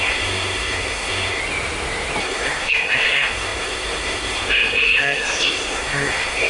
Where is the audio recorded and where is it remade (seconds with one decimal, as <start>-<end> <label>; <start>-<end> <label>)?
0.0-1.4 remade; 1.4-2.2 recorded; 2.2-6.5 remade